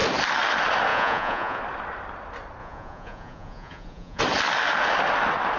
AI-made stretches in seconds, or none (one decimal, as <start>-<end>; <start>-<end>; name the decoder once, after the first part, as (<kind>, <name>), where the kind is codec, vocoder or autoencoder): 0.9-1.6 (vocoder, Vocos); 2.6-4.2